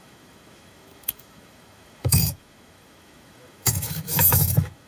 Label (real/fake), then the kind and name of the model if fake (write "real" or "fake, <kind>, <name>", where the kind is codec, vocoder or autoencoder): fake, autoencoder, DAC-VAE